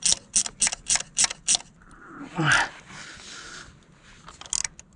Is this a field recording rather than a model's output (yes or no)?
yes